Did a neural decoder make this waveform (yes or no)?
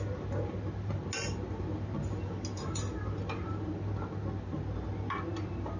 no